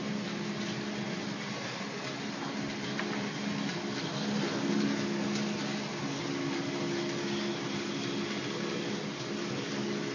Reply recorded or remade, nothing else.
recorded